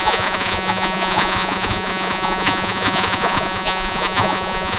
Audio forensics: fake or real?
fake